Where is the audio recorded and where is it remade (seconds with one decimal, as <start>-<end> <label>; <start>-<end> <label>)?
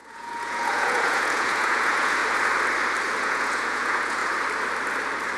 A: 0.0-2.2 remade; 2.2-3.2 recorded; 3.2-4.2 remade; 4.2-5.4 recorded